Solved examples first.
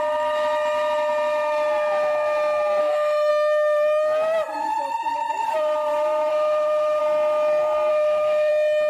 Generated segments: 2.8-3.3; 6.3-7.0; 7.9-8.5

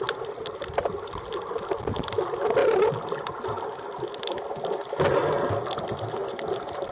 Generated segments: 2.6-3.8; 6.2-6.9

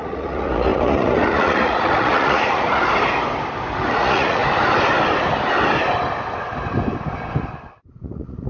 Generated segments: 0.0-2.8; 3.9-4.4; 7.9-8.5

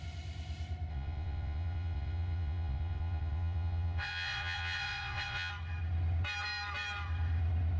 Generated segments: 0.9-5.5

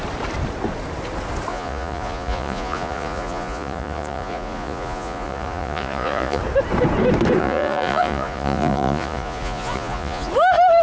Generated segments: 1.5-6.4; 7.4-10.3

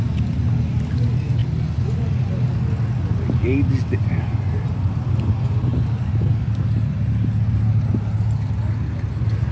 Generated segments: none